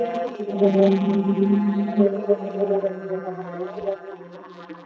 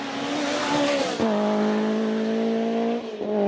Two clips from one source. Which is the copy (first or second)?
first